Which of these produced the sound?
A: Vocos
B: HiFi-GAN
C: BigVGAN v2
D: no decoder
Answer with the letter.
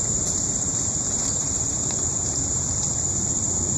C